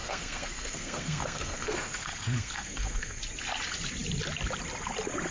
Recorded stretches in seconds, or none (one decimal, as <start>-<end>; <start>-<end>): 3.2-5.3